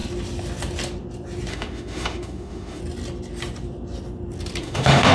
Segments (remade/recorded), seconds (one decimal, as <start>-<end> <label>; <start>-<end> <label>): 0.0-1.5 recorded; 1.5-2.8 remade; 2.8-4.6 recorded; 4.6-5.1 remade